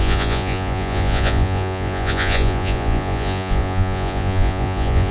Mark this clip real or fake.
fake